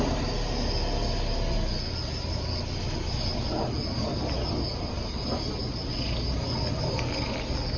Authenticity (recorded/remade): recorded